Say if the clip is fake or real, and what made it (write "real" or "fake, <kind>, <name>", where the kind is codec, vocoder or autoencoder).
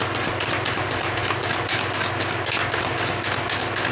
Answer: real